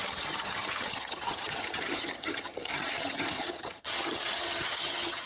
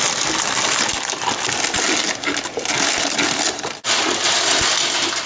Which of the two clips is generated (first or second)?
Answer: first